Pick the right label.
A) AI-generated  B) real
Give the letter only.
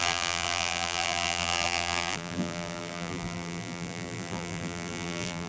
A